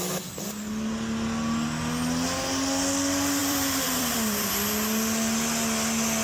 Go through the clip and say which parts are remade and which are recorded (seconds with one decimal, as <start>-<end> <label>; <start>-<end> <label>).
0.0-3.4 recorded; 3.4-4.5 remade; 4.5-6.2 recorded